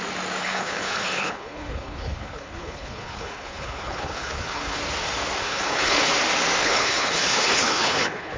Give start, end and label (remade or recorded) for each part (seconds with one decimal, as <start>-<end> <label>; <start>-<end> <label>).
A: 0.0-0.4 recorded; 0.4-4.8 remade; 4.8-5.4 recorded; 5.4-6.1 remade; 6.1-6.6 recorded; 6.6-8.4 remade